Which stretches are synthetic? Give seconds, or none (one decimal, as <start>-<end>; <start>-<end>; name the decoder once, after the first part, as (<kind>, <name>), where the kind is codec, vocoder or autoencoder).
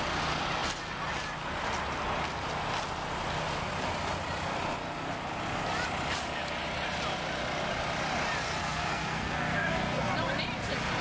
8.6-10.1 (codec, SNAC)